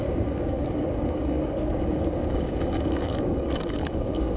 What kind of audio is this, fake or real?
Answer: fake